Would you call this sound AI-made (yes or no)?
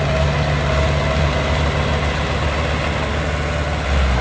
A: no